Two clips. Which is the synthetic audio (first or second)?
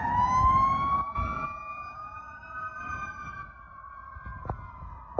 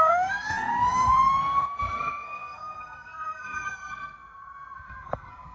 second